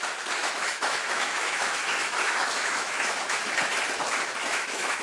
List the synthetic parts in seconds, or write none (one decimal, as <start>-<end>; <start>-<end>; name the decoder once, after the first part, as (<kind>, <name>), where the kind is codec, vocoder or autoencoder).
0.4-3.4 (autoencoder, DAC-VAE); 4.4-5.0